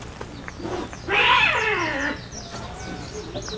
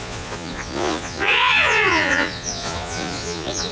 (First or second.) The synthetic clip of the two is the second